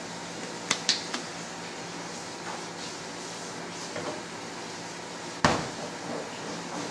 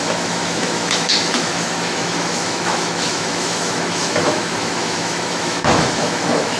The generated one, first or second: second